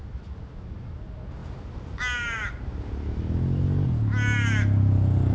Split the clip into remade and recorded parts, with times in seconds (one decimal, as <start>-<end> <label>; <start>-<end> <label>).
0.0-5.3 recorded